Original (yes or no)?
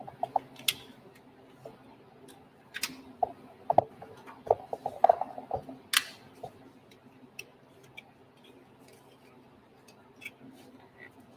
yes